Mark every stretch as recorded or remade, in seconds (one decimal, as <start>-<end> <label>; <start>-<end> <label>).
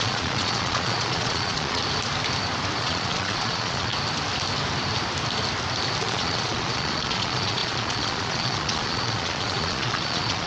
0.0-1.8 remade; 1.8-2.8 recorded; 2.8-3.9 remade; 3.9-6.0 recorded; 6.0-10.5 remade